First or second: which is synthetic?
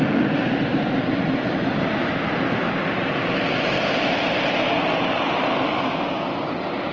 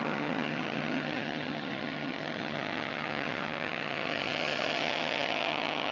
second